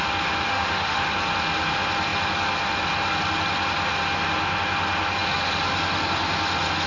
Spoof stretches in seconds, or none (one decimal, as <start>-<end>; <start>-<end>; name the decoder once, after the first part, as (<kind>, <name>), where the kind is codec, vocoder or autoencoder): 0.5-1.0 (autoencoder, DAC-VAE)